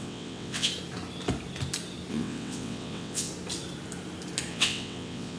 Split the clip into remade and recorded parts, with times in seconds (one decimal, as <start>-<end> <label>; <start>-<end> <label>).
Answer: 0.0-0.7 remade; 0.7-2.1 recorded; 2.1-3.3 remade; 3.3-4.5 recorded; 4.5-5.4 remade